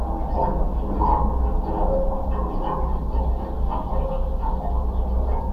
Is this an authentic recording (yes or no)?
yes